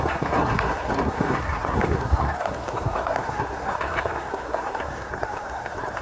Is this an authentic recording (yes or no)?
no